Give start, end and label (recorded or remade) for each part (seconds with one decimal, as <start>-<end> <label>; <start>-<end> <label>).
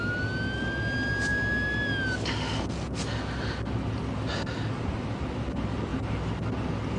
0.0-7.0 recorded